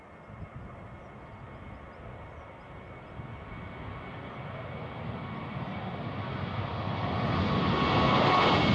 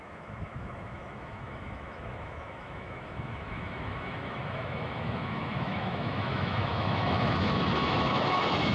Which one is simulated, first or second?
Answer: second